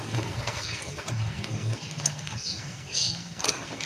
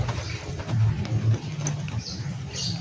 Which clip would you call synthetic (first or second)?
first